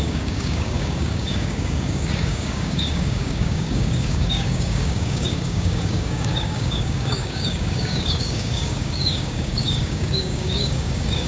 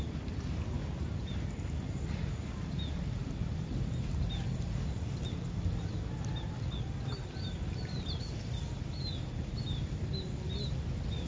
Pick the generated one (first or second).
first